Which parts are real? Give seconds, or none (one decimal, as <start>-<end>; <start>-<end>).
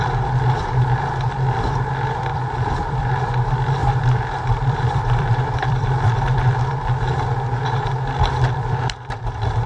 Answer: 0.0-2.3; 3.0-3.8; 6.1-9.7